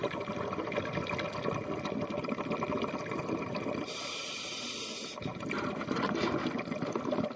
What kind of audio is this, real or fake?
real